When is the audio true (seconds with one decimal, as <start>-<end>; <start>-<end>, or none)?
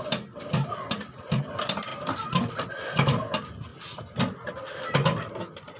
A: 0.0-5.8